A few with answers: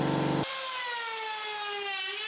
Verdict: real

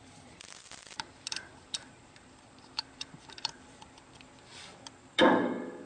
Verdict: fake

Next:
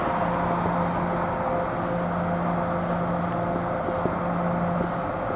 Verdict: real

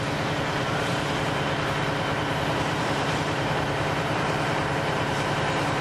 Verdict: fake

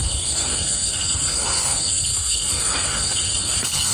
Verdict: fake